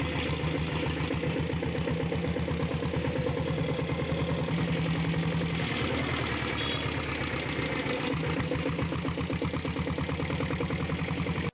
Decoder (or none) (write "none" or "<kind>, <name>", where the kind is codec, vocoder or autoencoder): none